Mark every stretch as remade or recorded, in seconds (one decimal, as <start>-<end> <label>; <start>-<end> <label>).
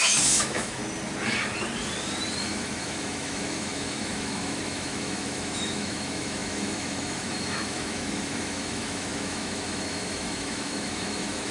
0.0-0.8 remade; 0.8-2.4 recorded; 2.4-11.5 remade